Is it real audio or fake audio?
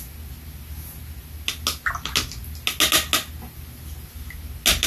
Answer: real